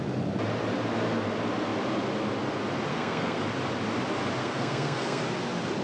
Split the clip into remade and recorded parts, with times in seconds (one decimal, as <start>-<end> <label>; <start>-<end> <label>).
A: 0.0-2.9 recorded; 2.9-3.4 remade; 3.4-4.4 recorded; 4.4-5.2 remade; 5.2-5.8 recorded